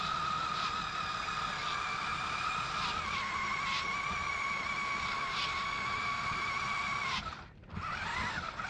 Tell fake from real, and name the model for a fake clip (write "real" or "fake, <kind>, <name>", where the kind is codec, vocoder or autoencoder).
real